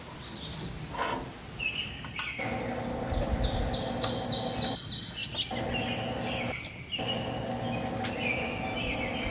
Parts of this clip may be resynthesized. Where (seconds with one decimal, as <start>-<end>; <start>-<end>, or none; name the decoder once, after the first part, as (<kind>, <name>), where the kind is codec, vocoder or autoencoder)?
none